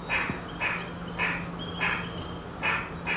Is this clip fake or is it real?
real